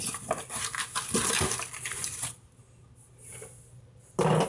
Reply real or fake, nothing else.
real